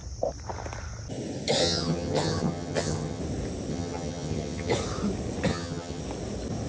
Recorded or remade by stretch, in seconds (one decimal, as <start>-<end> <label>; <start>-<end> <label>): 0.0-1.6 recorded; 1.6-3.2 remade; 3.2-3.7 recorded; 3.7-4.7 remade; 4.7-5.5 recorded; 5.5-6.0 remade; 6.0-6.7 recorded